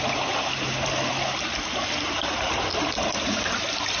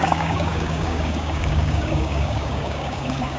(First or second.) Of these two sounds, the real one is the first